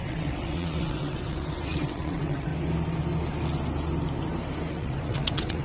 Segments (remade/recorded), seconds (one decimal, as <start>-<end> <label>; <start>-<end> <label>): 0.0-2.5 remade; 2.5-4.7 recorded; 4.7-5.6 remade